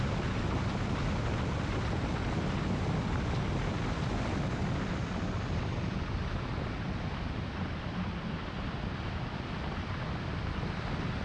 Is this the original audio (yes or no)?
yes